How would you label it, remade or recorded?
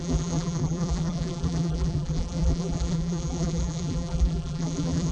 remade